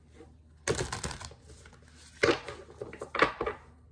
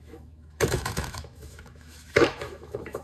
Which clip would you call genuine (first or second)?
first